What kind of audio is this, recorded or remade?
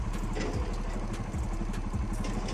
recorded